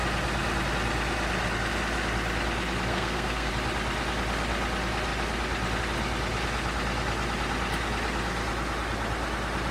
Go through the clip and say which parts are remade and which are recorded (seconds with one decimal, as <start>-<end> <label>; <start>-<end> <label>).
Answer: 0.0-2.9 recorded; 2.9-3.5 remade; 3.5-9.7 recorded